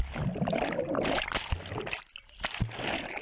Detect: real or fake real